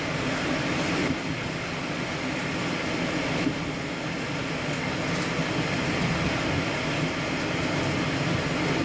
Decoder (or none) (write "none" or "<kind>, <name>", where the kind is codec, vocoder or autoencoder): none